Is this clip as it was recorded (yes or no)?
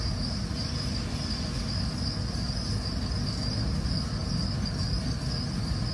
yes